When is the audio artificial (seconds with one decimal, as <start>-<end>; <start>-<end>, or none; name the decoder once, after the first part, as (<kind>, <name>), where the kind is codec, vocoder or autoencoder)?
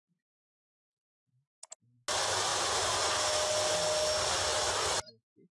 none